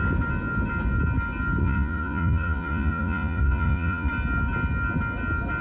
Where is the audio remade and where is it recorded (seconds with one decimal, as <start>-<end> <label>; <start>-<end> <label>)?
0.0-1.6 recorded; 1.6-4.1 remade; 4.1-5.6 recorded